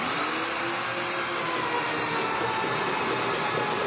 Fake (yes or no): no